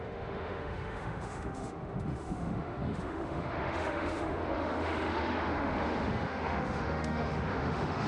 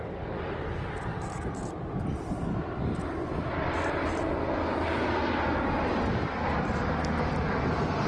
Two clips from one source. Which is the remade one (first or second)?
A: first